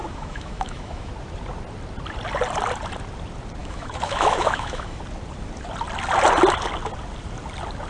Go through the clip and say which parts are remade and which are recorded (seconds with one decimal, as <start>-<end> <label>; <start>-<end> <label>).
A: 0.0-1.1 remade; 1.1-3.6 recorded; 3.6-5.0 remade; 5.0-7.9 recorded